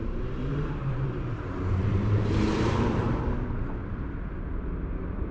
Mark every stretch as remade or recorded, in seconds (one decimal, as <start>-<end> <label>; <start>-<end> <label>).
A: 0.0-3.2 remade; 3.2-5.3 recorded